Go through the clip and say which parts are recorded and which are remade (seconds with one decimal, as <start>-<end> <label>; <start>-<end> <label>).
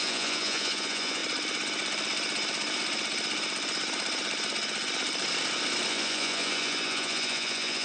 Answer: 0.0-1.2 remade; 1.2-5.9 recorded; 5.9-7.8 remade